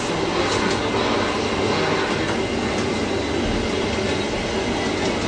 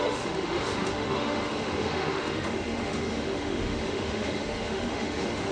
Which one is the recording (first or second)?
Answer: first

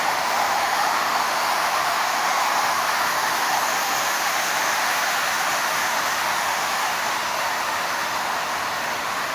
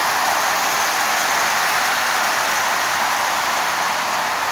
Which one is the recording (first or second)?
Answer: second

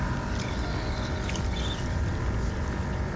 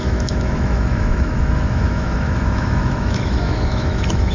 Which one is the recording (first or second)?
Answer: first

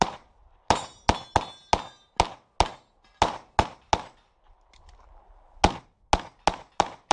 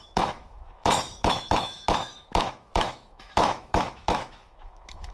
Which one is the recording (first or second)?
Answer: first